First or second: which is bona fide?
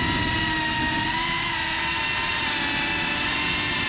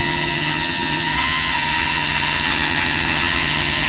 first